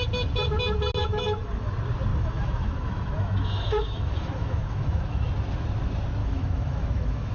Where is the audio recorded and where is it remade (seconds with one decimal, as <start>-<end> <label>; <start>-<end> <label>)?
0.0-1.0 recorded; 1.0-1.7 remade; 1.7-2.1 recorded; 2.1-5.3 remade; 5.3-6.2 recorded; 6.2-7.3 remade

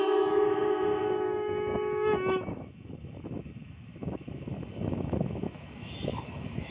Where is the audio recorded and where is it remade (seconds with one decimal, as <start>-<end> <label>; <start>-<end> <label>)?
0.0-6.7 remade

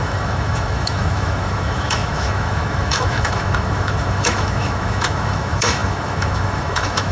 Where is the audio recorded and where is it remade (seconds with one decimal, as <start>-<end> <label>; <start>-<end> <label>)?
0.0-7.1 remade

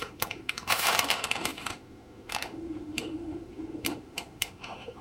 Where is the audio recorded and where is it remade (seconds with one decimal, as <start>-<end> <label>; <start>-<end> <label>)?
0.0-5.0 remade

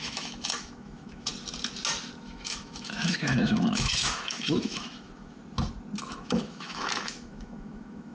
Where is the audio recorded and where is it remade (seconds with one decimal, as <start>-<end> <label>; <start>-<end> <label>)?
0.0-1.3 remade; 1.3-2.2 recorded; 2.2-5.4 remade; 5.4-6.0 recorded; 6.0-8.1 remade

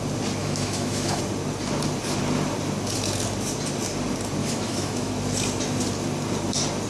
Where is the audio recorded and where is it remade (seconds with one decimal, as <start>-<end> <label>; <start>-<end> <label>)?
0.0-0.4 recorded; 0.4-1.2 remade; 1.2-4.4 recorded; 4.4-5.1 remade; 5.1-6.9 recorded

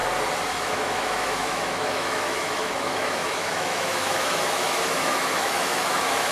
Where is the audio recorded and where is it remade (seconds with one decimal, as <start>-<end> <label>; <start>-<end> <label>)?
0.0-0.6 recorded; 0.6-6.3 remade

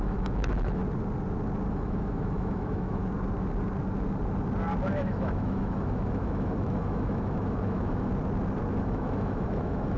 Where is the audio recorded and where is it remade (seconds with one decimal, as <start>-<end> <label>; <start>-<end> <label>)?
0.0-0.8 remade; 0.8-1.7 recorded; 1.7-3.0 remade; 3.0-4.9 recorded; 4.9-8.1 remade; 8.1-8.8 recorded; 8.8-10.0 remade